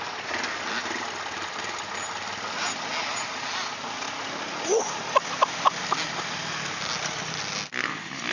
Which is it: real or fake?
real